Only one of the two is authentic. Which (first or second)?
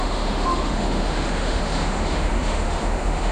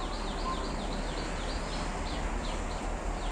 second